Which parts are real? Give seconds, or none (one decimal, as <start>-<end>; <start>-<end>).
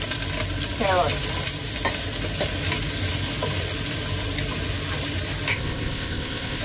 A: 0.0-5.5